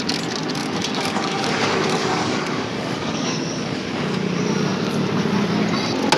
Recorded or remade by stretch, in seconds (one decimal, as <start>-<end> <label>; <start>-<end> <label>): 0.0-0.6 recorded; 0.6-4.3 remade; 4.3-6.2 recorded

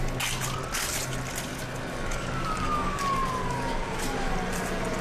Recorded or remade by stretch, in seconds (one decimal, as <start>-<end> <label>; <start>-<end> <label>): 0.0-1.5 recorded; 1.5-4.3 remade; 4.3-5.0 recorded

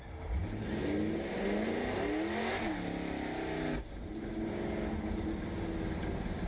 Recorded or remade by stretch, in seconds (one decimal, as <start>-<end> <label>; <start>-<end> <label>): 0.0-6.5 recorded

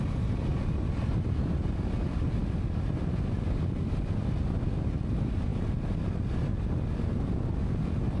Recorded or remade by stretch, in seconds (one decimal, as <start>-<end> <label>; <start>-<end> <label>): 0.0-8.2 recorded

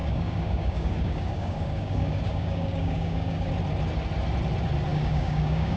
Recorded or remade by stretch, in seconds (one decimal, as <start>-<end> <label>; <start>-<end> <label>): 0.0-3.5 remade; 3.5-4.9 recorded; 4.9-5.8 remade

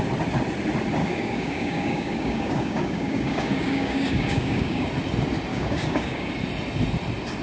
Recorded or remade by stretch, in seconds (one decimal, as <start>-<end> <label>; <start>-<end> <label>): 0.0-1.0 recorded; 1.0-4.9 remade; 4.9-5.5 recorded; 5.5-6.3 remade; 6.3-7.4 recorded

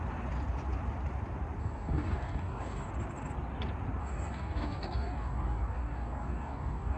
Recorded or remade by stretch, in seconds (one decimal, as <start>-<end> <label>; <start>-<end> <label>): 0.0-1.6 recorded; 1.6-2.9 remade; 2.9-4.0 recorded; 4.0-7.0 remade

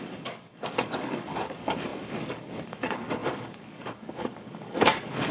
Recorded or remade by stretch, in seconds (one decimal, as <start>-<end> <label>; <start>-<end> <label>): 0.0-5.3 remade